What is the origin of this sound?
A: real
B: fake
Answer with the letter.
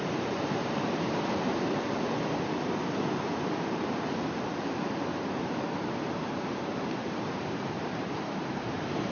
B